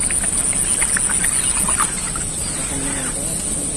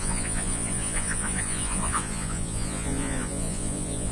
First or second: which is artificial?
second